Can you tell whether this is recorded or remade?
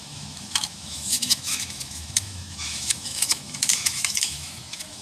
remade